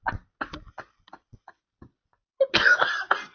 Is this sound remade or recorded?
recorded